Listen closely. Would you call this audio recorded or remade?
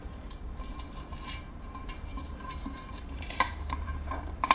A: remade